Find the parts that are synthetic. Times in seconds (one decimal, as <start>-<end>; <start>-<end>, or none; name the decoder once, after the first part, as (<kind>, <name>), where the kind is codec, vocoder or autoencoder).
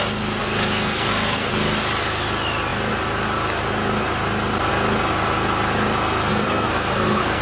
0.4-1.5 (codec, SNAC); 6.3-7.4